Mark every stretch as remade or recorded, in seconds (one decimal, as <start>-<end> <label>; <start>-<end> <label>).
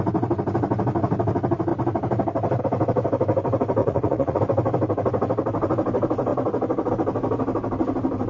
0.0-3.8 recorded; 3.8-4.4 remade; 4.4-8.3 recorded